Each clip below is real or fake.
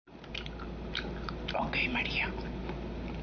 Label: real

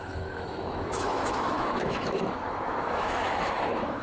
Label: fake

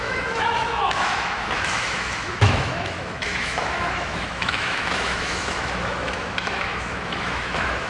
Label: fake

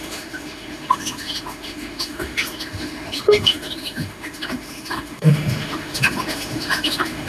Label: fake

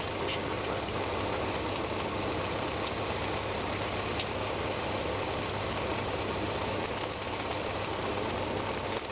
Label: real